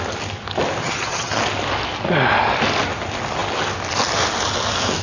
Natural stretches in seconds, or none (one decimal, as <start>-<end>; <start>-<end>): 0.0-0.8; 1.4-5.0